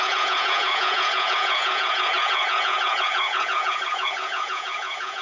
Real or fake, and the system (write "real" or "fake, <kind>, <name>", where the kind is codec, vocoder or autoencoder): fake, vocoder, Vocos